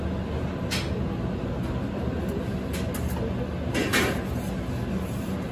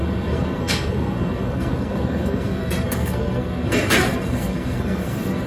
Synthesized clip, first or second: second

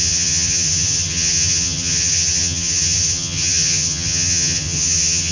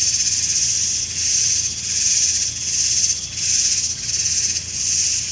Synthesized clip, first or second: first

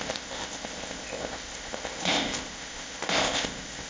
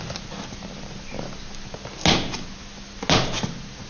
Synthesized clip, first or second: first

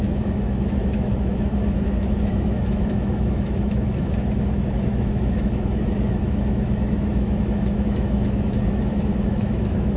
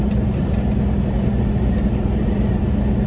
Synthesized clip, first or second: first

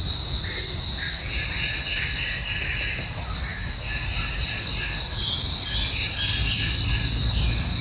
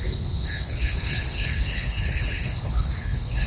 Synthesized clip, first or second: second